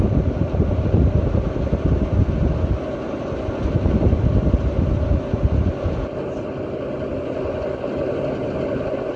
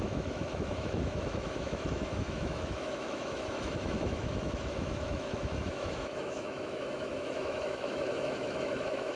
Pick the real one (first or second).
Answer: first